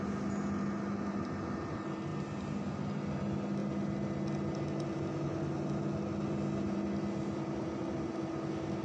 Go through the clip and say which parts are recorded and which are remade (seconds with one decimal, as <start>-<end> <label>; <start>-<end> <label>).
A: 0.0-8.8 recorded